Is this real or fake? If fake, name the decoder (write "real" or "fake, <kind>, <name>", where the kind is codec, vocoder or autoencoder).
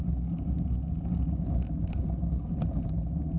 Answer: real